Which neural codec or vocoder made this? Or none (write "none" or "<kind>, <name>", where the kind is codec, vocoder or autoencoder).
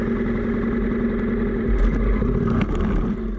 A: none